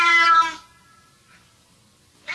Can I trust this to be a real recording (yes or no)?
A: yes